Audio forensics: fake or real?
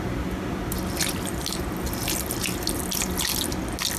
real